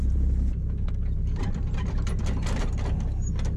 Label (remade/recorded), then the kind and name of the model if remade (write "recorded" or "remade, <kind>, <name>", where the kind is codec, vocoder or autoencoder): recorded